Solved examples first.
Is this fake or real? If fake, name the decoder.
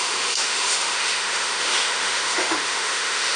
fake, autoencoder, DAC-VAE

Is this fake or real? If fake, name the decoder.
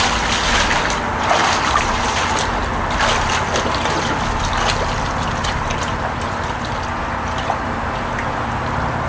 real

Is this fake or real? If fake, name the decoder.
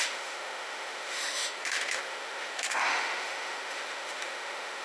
fake, autoencoder, DAC-VAE